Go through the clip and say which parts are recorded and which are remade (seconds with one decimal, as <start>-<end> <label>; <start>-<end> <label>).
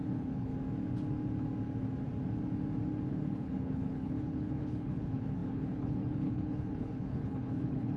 0.0-0.5 remade; 0.5-3.1 recorded; 3.1-8.0 remade